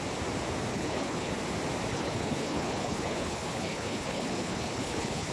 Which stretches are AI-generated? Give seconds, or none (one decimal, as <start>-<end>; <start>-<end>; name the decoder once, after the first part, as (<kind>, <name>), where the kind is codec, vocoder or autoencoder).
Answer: 0.7-1.3 (codec, HILCodec); 1.9-5.3